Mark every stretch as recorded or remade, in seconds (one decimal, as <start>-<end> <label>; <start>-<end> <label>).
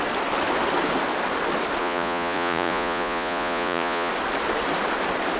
0.0-1.8 recorded; 1.8-4.1 remade; 4.1-5.4 recorded